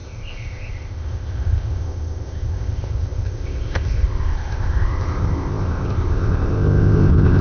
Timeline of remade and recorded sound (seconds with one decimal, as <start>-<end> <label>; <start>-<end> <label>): 0.0-7.4 remade